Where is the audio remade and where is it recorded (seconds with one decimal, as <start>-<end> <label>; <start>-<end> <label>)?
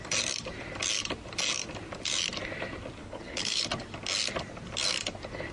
0.0-3.0 recorded; 3.0-3.6 remade; 3.6-5.5 recorded